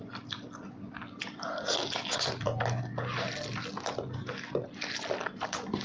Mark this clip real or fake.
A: real